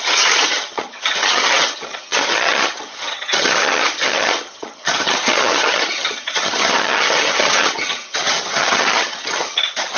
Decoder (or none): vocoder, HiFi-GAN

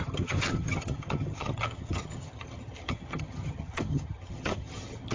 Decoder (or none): vocoder, HiFi-GAN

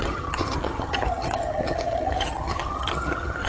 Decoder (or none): vocoder, HiFi-GAN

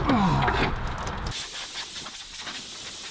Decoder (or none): none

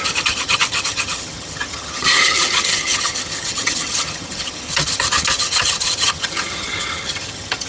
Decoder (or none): vocoder, HiFi-GAN